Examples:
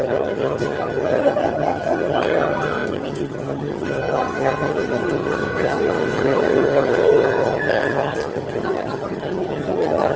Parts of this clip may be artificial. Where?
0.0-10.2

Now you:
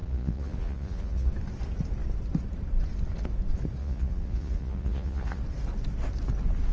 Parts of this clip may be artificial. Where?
0.0-1.3; 3.8-5.4